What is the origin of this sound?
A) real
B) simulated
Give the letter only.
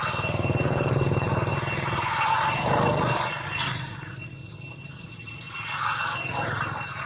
A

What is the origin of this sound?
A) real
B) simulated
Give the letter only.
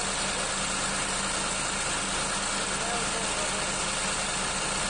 A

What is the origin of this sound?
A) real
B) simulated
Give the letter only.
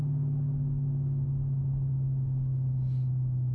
A